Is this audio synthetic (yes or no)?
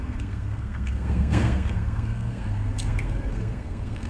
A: yes